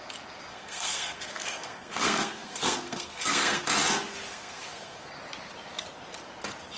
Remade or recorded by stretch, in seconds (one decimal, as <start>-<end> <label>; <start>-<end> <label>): 0.0-0.5 recorded; 0.5-3.6 remade; 3.6-4.3 recorded; 4.3-5.1 remade; 5.1-6.8 recorded

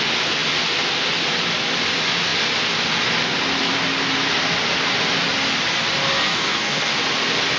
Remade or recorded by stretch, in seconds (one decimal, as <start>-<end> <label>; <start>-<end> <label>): 0.0-6.1 recorded; 6.1-6.9 remade; 6.9-7.6 recorded